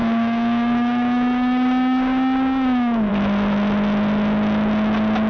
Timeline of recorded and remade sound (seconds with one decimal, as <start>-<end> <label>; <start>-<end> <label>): 0.0-3.1 remade; 3.1-5.3 recorded